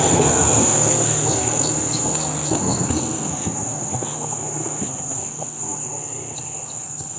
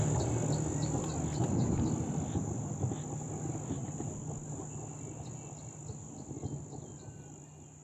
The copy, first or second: first